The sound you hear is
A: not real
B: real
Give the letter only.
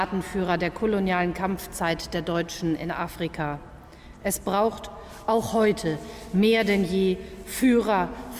B